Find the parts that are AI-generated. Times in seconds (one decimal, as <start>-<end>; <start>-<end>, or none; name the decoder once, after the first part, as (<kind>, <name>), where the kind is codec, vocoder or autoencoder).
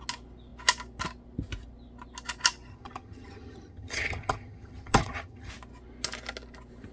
2.7-5.5 (vocoder, HiFi-GAN)